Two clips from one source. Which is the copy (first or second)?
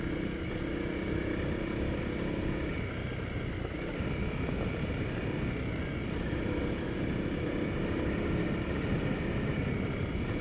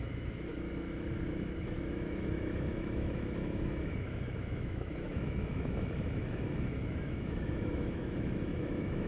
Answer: second